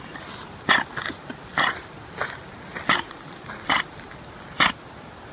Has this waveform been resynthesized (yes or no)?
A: no